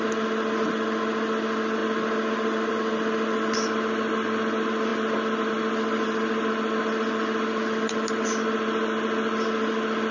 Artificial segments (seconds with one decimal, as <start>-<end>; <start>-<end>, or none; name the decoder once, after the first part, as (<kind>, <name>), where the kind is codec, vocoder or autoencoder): none